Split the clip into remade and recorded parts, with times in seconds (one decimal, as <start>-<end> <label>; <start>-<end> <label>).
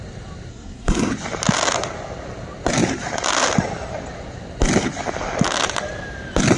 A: 0.0-0.5 recorded; 0.5-1.1 remade; 1.1-6.6 recorded